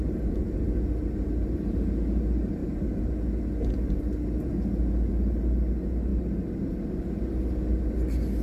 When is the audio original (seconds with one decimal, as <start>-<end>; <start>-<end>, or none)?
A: 0.0-8.4